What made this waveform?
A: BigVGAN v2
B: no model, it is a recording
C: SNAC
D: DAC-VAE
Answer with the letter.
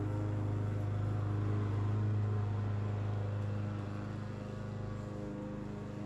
B